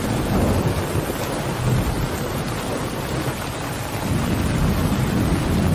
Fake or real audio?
real